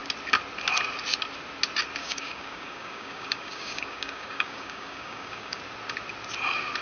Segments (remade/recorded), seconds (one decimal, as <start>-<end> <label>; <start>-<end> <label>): 0.0-2.0 recorded; 2.0-5.6 remade; 5.6-6.8 recorded